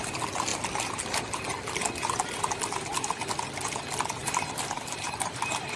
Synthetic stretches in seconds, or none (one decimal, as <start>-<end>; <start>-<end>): 4.2-5.8